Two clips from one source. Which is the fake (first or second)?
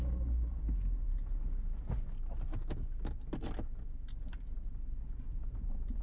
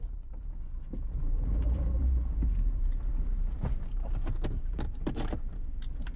second